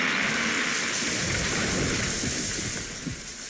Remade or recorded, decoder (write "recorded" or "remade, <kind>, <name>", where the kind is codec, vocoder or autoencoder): recorded